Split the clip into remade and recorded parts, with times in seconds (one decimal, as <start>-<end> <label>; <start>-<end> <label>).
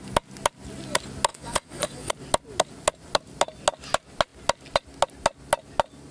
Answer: 0.0-1.3 recorded; 1.3-2.1 remade; 2.1-6.1 recorded